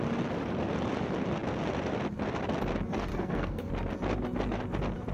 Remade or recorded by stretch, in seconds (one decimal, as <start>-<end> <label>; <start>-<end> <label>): 0.0-3.1 recorded; 3.1-3.7 remade; 3.7-5.1 recorded